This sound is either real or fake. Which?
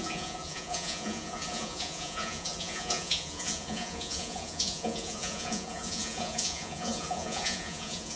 fake